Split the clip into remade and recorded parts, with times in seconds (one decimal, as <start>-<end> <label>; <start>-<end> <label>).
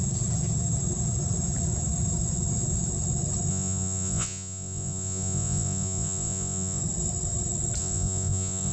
0.0-3.5 recorded; 3.5-6.8 remade; 6.8-7.8 recorded; 7.8-8.7 remade